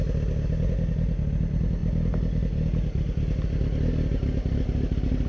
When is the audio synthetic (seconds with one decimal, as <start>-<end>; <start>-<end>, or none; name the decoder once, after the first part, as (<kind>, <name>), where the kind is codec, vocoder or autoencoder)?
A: none